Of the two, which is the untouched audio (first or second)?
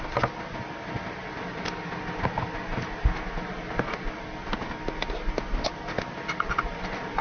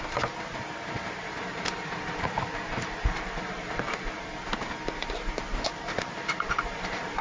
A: first